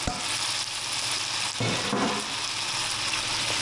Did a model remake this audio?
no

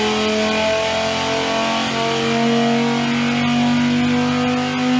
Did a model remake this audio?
no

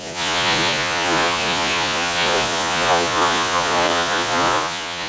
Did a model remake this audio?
yes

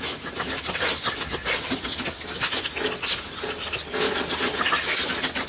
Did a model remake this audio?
no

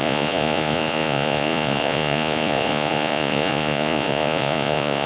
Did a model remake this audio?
yes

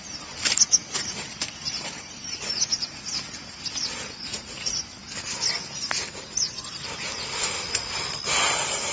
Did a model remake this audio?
no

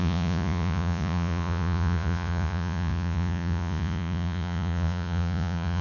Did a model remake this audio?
yes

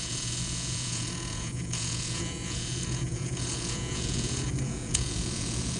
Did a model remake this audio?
yes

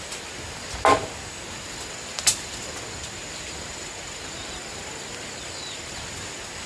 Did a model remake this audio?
no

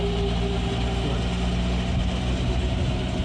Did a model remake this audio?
no